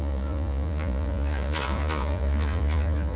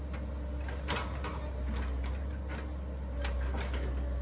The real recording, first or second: second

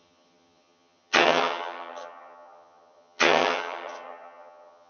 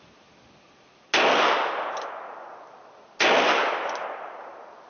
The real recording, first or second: second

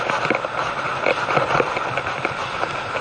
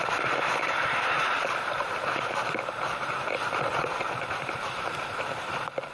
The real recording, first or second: first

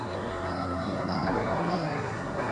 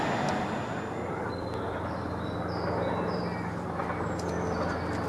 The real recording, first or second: second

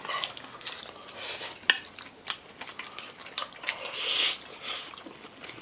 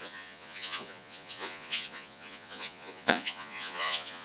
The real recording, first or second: first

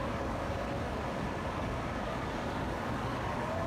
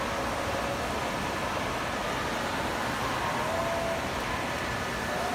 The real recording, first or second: second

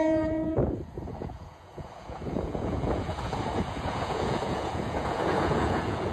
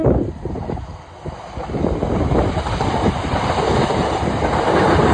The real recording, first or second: second